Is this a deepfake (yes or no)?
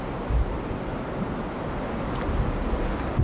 no